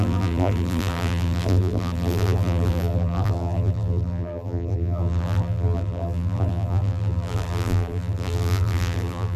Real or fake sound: fake